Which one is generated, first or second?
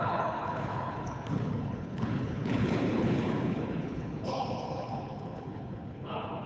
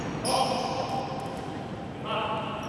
first